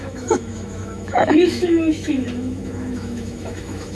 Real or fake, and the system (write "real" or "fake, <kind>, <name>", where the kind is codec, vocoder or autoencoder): fake, autoencoder, DAC-VAE